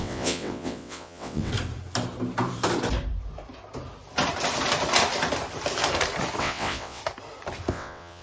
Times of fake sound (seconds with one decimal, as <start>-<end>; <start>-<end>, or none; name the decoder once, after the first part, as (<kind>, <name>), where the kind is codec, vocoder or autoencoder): 0.0-1.5 (vocoder, WaveNeXt); 6.4-7.0; 7.7-8.2